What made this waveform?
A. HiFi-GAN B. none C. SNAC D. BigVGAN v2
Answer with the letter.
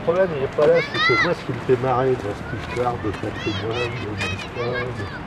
D